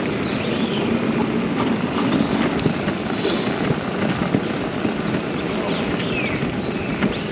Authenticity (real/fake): real